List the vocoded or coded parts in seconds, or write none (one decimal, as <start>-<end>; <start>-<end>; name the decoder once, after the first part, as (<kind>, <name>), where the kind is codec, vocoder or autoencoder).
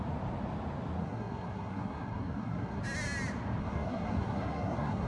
1.0-2.8 (codec, SNAC); 3.6-5.1